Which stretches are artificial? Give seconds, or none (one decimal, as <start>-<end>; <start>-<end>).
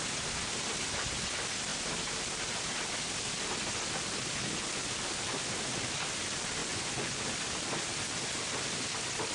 6.6-7.2